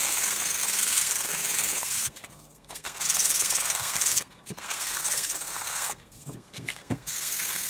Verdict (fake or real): fake